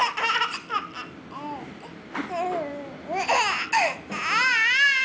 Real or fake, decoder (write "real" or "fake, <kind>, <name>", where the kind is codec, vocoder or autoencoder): real